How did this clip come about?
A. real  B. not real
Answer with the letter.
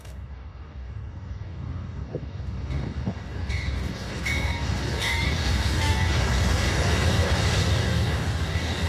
B